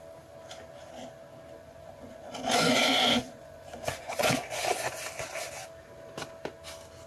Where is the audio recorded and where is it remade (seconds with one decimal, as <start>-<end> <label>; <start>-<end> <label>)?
0.0-1.6 recorded; 1.6-4.9 remade; 4.9-7.1 recorded